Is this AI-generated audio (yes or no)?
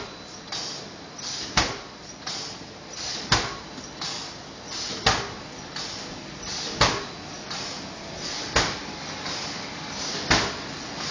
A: no